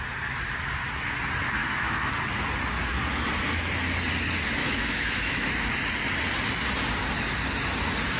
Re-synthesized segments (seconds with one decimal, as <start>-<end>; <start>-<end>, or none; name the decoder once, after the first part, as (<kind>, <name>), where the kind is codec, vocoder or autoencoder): 1.6-2.1 (autoencoder, DAC-VAE); 4.6-5.5